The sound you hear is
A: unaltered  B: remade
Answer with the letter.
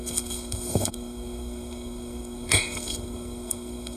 B